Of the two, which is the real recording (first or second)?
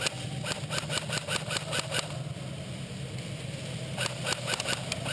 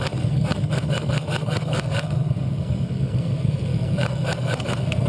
first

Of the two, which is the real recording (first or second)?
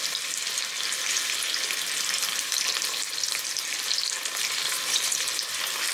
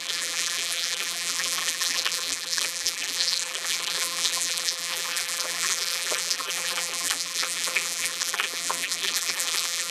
first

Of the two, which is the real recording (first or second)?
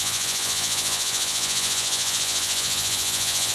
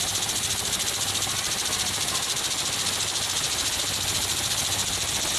second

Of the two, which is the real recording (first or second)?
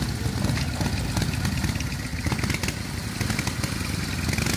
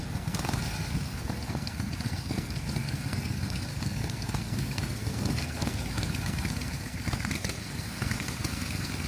first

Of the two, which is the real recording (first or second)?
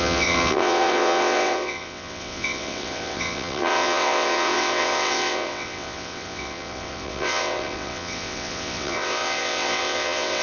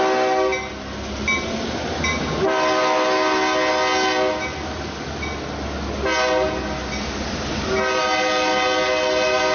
second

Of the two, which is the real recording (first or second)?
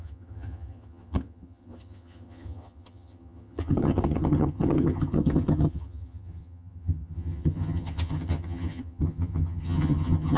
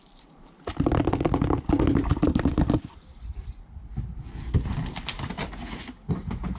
second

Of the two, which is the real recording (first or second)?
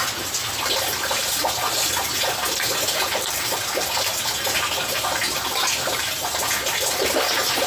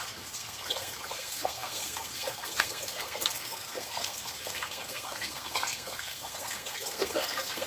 first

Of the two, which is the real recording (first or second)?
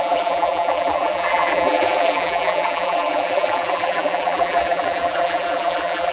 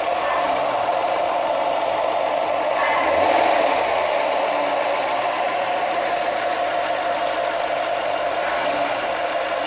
second